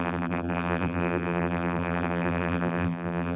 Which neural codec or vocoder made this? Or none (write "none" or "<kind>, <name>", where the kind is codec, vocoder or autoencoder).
vocoder, BigVGAN v2